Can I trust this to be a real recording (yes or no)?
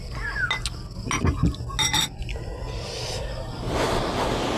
yes